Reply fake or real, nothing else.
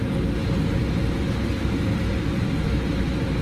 fake